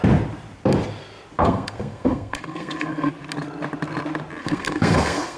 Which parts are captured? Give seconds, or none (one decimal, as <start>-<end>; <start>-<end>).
0.0-1.4; 3.1-4.4